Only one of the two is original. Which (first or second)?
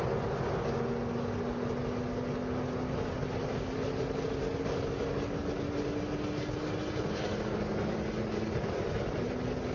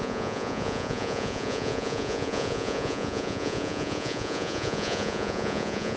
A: first